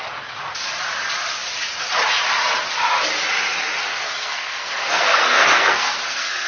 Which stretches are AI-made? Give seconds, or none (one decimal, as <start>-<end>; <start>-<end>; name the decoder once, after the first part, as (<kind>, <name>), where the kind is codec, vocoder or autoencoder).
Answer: 3.9-6.5 (codec, SNAC)